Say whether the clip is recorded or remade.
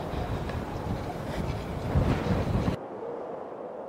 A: recorded